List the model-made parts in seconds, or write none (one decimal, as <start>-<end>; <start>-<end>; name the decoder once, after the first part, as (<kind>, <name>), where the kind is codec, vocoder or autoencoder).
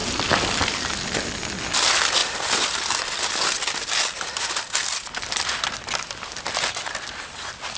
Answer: none